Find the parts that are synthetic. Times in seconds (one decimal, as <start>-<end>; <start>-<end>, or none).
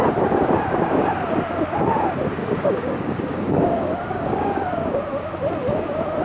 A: 2.4-5.3